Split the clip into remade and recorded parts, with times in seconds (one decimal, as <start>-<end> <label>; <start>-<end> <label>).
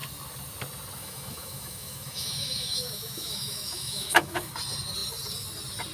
0.0-1.0 recorded; 1.0-4.5 remade; 4.5-5.9 recorded